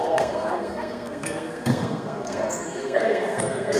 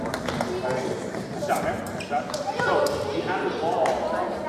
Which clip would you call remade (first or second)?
first